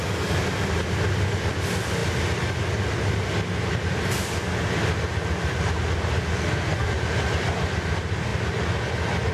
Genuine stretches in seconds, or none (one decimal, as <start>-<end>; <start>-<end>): 0.0-6.3; 6.9-9.3